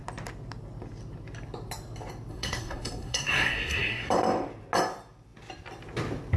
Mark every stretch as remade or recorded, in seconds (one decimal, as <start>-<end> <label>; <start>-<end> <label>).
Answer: 0.0-2.3 recorded; 2.3-4.1 remade; 4.1-6.4 recorded